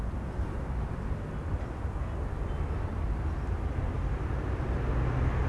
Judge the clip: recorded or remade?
recorded